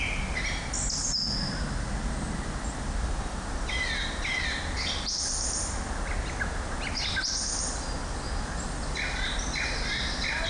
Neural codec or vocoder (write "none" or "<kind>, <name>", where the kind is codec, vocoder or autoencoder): none